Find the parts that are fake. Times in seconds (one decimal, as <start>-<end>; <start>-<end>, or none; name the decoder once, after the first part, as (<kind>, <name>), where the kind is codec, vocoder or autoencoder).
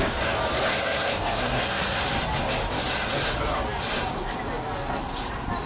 0.7-2.0 (codec, SNAC)